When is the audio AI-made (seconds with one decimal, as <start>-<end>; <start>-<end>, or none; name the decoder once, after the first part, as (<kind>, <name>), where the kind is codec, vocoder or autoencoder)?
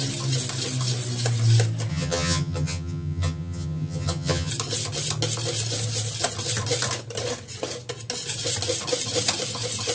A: 1.9-4.5 (vocoder, HiFi-GAN)